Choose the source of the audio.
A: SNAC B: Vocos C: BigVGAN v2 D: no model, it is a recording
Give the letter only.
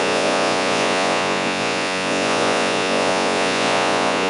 B